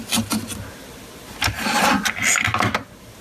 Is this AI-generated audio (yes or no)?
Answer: no